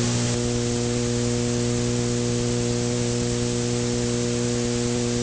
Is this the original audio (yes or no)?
yes